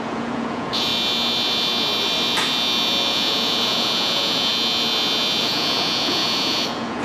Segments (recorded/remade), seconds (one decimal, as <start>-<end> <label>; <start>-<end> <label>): 0.0-0.9 remade; 0.9-3.1 recorded; 3.1-4.5 remade; 4.5-5.4 recorded; 5.4-7.0 remade